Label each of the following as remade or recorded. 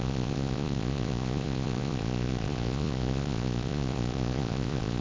remade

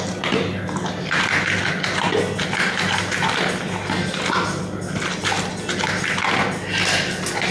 recorded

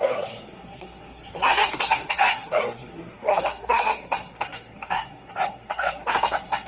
remade